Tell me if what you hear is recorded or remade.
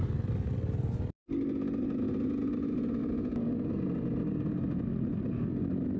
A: recorded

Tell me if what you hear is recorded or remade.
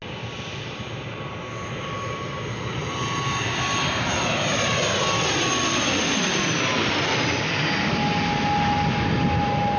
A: recorded